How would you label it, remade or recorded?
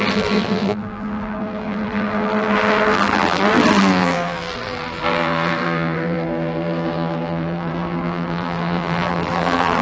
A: remade